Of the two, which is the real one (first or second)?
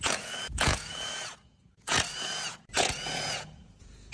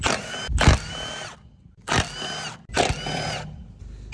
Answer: second